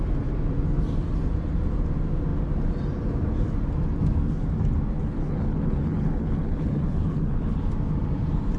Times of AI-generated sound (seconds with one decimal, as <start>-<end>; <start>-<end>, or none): 5.0-7.6